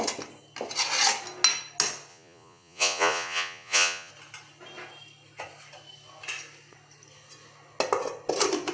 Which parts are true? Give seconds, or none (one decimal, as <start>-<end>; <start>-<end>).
0.0-2.1; 4.1-8.7